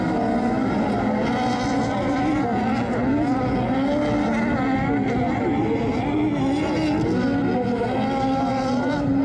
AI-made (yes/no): no